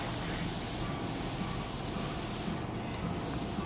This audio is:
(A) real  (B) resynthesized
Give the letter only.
A